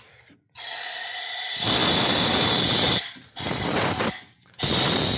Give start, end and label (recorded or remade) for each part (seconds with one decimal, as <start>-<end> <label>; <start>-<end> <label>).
0.0-5.2 recorded